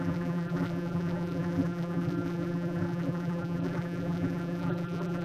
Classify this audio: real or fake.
fake